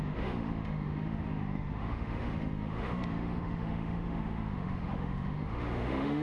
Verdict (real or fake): fake